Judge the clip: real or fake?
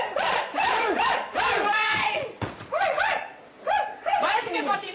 fake